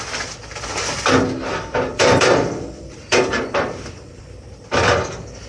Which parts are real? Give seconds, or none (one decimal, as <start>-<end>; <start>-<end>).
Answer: 0.0-1.9; 4.2-5.5